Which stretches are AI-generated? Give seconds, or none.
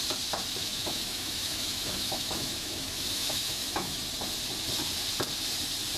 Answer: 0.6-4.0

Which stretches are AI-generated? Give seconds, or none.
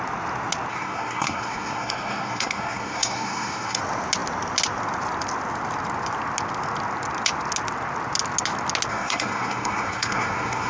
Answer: 0.7-3.8; 8.9-10.7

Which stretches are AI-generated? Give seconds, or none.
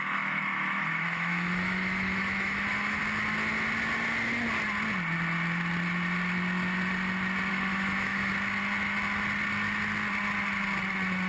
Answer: 0.0-3.0; 7.5-8.3